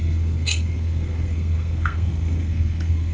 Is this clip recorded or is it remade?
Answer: remade